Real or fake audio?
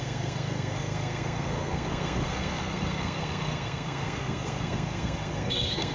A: fake